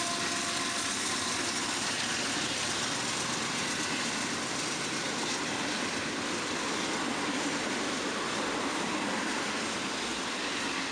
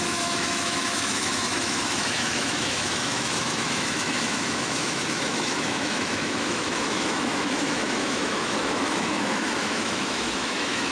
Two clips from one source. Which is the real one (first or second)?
first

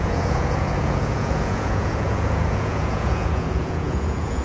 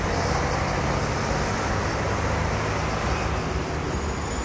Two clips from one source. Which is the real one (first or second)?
second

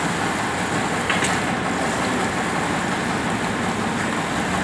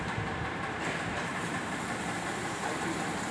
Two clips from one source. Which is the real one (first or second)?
first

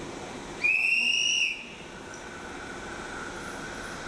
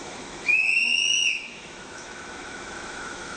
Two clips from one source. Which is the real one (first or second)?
first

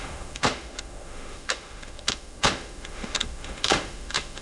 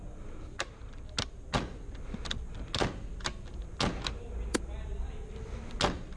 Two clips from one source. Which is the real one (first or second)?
second